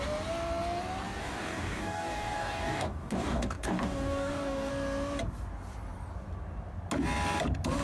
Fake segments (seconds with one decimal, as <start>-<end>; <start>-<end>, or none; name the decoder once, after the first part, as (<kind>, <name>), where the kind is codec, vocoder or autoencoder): 1.2-4.7 (codec, DAC)